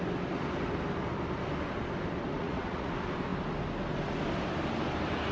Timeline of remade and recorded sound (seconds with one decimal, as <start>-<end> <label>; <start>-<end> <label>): 0.0-2.4 recorded; 2.4-2.9 remade; 2.9-5.3 recorded